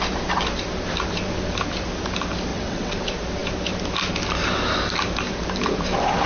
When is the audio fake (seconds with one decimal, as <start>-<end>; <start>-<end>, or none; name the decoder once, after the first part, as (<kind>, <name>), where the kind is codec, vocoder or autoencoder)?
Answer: 2.5-3.0 (vocoder, WaveNeXt)